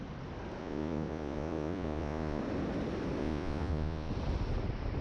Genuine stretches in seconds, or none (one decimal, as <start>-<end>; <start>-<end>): 0.0-0.6; 2.4-3.2; 4.1-5.0